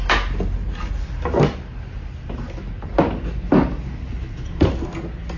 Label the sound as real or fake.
real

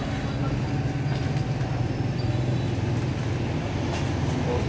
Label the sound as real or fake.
real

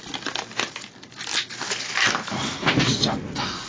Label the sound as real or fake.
real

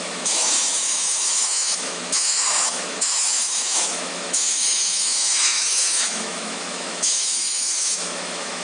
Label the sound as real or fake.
fake